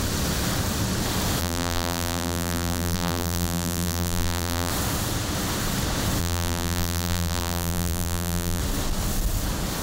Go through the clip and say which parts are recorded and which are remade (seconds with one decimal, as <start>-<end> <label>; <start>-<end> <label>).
0.0-1.4 recorded; 1.4-4.7 remade; 4.7-6.2 recorded; 6.2-8.6 remade; 8.6-9.8 recorded